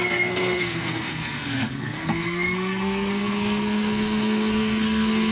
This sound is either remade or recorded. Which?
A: remade